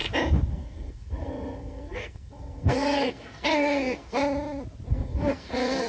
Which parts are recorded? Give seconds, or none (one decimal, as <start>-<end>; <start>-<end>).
0.0-0.5; 4.2-4.9